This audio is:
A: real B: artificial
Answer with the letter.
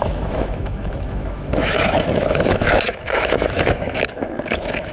B